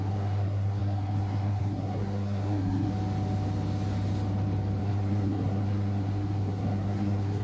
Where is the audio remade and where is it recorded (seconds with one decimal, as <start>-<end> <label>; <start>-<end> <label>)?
0.0-2.9 remade; 2.9-4.8 recorded; 4.8-7.4 remade